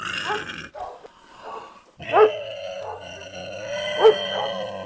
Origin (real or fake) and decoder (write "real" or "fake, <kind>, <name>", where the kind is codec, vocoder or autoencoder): real